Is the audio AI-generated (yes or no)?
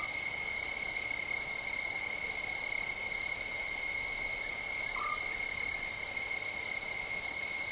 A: no